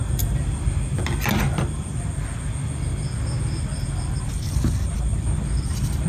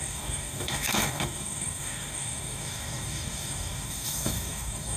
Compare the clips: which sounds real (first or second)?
first